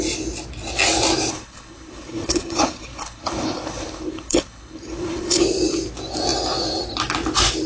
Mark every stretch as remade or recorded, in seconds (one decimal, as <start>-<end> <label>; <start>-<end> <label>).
0.0-1.3 recorded; 1.3-5.4 remade; 5.4-7.7 recorded